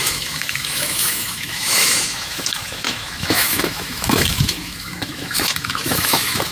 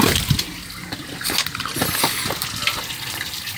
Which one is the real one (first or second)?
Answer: second